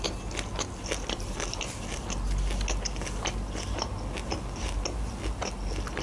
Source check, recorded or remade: recorded